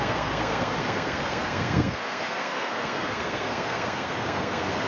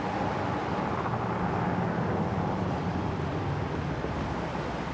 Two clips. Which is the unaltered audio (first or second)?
second